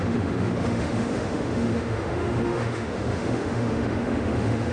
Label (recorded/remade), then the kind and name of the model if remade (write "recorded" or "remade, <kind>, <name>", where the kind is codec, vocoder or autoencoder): remade, autoencoder, DAC-VAE